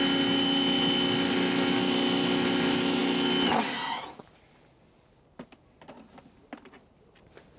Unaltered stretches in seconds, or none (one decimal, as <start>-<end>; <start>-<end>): 0.0-7.6